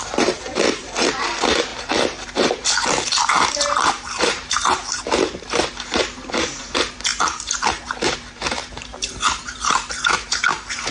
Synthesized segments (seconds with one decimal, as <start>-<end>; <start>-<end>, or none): 0.0-10.9